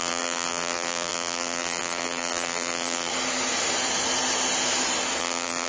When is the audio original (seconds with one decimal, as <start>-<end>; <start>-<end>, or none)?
3.1-5.2